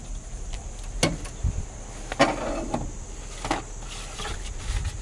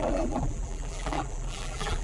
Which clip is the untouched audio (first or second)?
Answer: first